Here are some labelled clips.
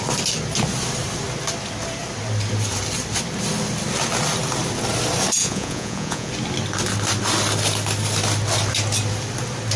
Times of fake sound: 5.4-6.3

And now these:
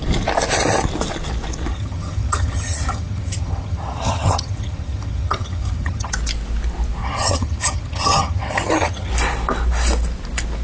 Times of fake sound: 1.7-6.1; 7.0-9.1

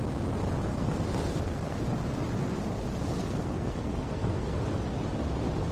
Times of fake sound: 0.7-1.8; 3.2-4.6

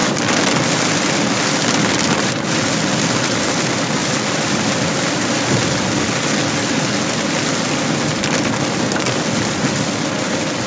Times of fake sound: none

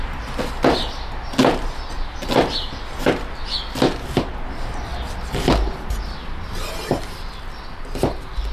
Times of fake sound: none